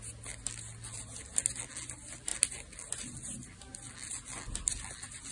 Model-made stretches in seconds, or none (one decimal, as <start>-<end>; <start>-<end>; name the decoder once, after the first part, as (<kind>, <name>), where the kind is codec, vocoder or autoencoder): none